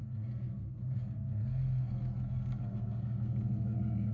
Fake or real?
fake